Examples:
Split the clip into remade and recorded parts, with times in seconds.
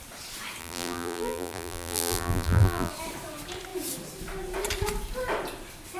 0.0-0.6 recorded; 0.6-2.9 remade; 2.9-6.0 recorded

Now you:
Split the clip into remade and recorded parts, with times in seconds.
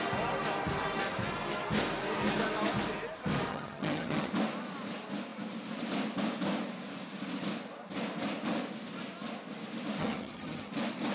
0.0-3.5 recorded; 3.5-4.3 remade; 4.3-10.0 recorded; 10.0-10.7 remade; 10.7-11.1 recorded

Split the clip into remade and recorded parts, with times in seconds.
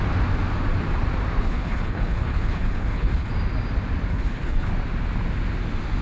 0.0-1.4 recorded; 1.4-3.3 remade; 3.3-4.1 recorded; 4.1-4.7 remade; 4.7-6.0 recorded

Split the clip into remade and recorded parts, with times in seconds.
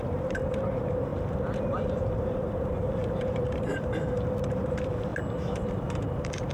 0.0-1.1 remade; 1.1-2.0 recorded; 2.0-5.1 remade; 5.1-5.7 recorded; 5.7-6.5 remade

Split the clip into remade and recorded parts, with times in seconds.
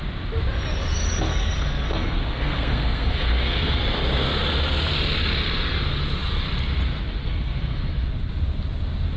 0.0-1.3 recorded; 1.3-3.8 remade; 3.8-7.2 recorded; 7.2-8.1 remade; 8.1-9.2 recorded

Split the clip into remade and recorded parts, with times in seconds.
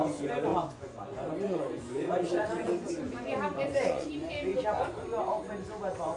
0.0-0.5 recorded; 0.5-2.9 remade; 2.9-3.5 recorded; 3.5-4.1 remade; 4.1-6.2 recorded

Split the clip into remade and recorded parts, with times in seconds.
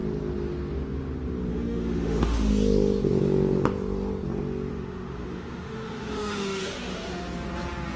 0.0-1.5 recorded; 1.5-2.5 remade; 2.5-4.7 recorded; 4.7-7.2 remade; 7.2-8.0 recorded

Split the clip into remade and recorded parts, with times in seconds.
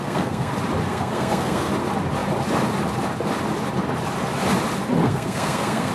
0.0-0.5 remade; 0.5-0.9 recorded; 0.9-1.7 remade; 1.7-5.0 recorded; 5.0-5.9 remade